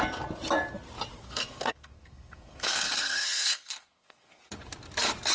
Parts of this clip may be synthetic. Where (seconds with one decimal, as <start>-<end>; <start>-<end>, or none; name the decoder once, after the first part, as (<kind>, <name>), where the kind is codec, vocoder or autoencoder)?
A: 1.2-4.4 (codec, SNAC)